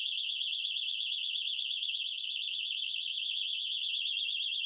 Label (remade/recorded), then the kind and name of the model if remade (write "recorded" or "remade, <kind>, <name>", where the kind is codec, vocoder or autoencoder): remade, vocoder, BigVGAN v2